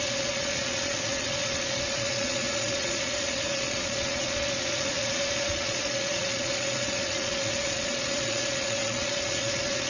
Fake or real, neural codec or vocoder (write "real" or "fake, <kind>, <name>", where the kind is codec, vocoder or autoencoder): fake, vocoder, Vocos